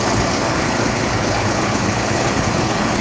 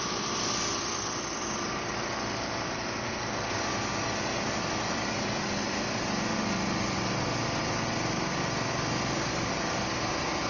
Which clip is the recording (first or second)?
second